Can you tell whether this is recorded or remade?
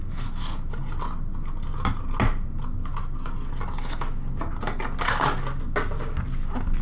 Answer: recorded